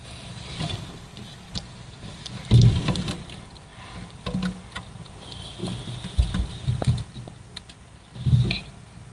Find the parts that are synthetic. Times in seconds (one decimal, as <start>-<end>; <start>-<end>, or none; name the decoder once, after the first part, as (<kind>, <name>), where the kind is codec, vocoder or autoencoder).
0.0-3.0 (vocoder, BigVGAN v2); 3.7-4.4